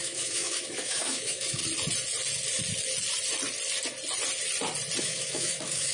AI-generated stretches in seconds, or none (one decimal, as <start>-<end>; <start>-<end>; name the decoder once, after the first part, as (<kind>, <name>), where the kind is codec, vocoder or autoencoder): 0.0-1.6 (autoencoder, DAC-VAE); 5.0-5.9